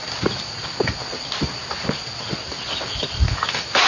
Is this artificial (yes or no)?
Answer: no